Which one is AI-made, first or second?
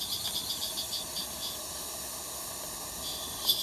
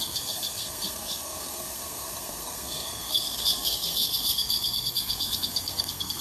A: second